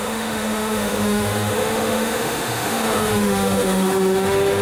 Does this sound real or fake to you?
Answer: fake